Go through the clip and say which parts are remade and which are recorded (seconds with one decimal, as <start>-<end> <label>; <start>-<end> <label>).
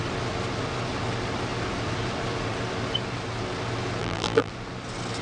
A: 0.0-4.0 recorded; 4.0-4.5 remade; 4.5-5.2 recorded